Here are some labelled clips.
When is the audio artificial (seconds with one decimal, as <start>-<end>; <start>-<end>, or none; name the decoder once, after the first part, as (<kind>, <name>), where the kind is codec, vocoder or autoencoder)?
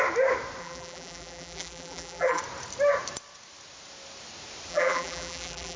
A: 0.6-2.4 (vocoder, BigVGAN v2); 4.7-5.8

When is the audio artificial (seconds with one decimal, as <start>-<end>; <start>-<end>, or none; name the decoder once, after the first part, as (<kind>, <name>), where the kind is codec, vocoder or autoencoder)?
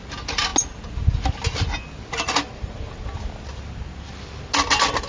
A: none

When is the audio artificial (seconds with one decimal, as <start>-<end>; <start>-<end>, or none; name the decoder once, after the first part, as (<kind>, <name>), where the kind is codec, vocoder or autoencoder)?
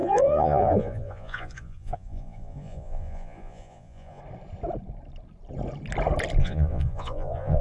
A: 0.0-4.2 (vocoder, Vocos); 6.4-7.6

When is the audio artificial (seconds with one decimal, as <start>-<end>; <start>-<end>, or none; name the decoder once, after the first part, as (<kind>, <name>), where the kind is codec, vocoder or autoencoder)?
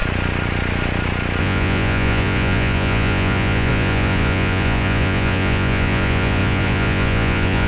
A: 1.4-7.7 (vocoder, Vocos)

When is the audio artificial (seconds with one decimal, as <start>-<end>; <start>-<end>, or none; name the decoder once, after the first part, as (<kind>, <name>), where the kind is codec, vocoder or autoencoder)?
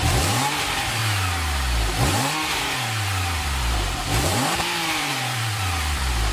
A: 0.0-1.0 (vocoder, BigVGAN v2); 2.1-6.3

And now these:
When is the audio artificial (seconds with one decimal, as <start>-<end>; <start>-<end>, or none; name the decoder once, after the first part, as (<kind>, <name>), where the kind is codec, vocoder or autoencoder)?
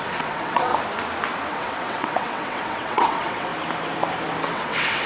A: 0.0-0.7 (vocoder, WaveNeXt); 1.5-3.5; 4.5-5.1